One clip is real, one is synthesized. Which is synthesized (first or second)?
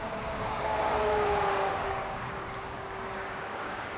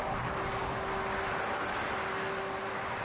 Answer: first